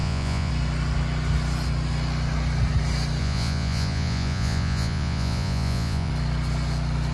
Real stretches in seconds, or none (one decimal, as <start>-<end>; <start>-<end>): 0.5-3.2; 6.1-7.1